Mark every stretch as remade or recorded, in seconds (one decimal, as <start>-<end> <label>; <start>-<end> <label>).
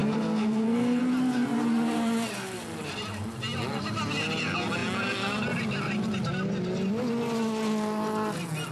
0.0-1.0 remade; 1.0-8.7 recorded